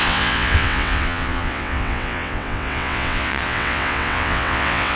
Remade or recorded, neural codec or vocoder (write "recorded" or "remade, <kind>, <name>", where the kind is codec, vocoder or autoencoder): remade, vocoder, WaveNeXt